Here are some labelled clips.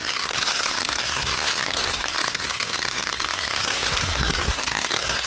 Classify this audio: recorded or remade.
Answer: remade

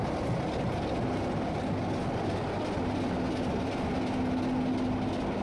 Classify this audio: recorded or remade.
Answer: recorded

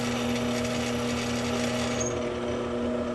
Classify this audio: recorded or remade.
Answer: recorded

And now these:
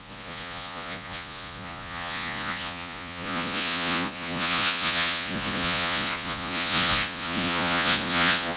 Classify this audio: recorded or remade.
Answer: remade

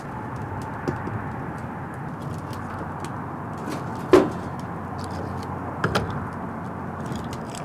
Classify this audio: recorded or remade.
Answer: recorded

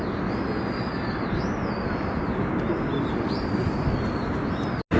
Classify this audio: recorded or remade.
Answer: recorded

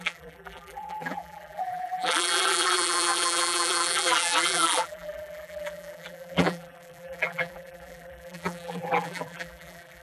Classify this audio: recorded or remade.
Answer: remade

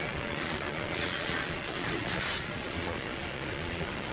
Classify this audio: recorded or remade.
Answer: remade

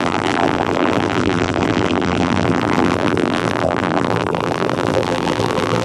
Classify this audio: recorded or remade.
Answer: remade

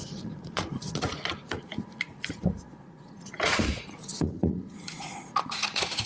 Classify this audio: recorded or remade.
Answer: remade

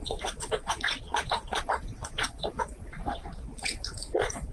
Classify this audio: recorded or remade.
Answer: remade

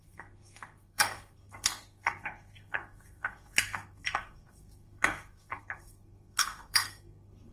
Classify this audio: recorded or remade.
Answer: remade